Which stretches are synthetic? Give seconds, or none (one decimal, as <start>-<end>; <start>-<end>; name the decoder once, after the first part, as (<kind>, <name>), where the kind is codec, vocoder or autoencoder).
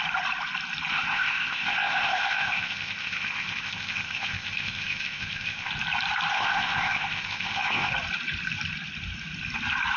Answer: 0.9-5.7 (codec, ZipCodec); 6.3-7.9